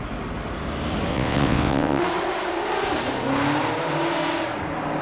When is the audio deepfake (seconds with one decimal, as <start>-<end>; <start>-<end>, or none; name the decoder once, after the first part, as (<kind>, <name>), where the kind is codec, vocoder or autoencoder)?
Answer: 1.1-2.0 (vocoder, WaveNeXt)